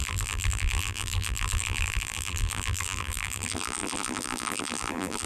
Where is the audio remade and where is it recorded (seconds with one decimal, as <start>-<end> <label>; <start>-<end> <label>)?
0.0-5.2 remade